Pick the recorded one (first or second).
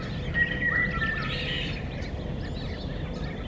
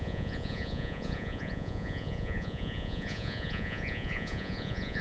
first